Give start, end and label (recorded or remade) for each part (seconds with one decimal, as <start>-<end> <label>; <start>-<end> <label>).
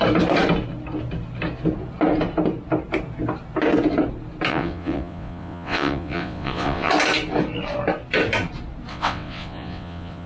0.0-4.5 recorded; 4.5-6.9 remade; 6.9-8.9 recorded; 8.9-10.3 remade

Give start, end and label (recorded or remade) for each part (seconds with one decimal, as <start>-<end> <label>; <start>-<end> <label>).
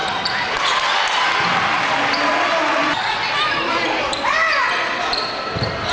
0.0-5.9 recorded